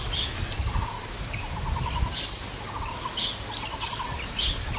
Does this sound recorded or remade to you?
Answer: recorded